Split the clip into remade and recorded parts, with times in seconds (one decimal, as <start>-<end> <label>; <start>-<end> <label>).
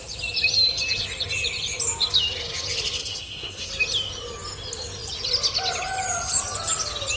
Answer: 0.0-3.0 recorded; 3.0-3.7 remade; 3.7-7.2 recorded